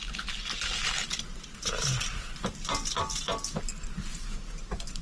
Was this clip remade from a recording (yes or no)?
no